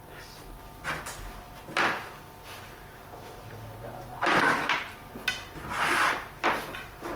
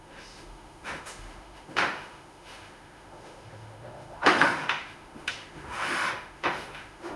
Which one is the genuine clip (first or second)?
first